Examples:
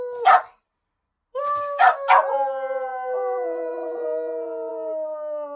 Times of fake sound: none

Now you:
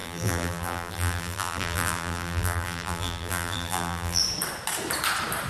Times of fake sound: 0.0-4.2 (vocoder, BigVGAN v2)

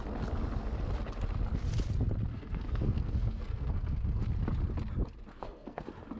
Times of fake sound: 2.3-4.2 (codec, SNAC); 5.3-5.8

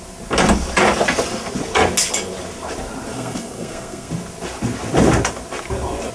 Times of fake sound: 3.1-4.1 (codec, SNAC)